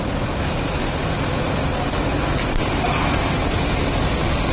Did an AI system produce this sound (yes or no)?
no